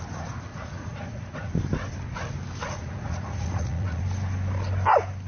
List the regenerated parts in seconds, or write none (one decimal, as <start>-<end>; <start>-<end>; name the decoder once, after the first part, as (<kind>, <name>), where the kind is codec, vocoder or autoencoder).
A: 0.5-1.5 (vocoder, Vocos); 2.6-4.0